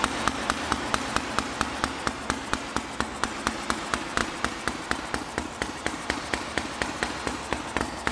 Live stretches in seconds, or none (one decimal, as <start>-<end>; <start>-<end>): 0.0-4.2; 7.0-8.1